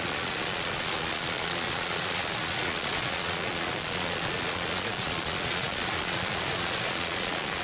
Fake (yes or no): yes